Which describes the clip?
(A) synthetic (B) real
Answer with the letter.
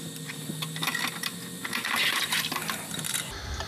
B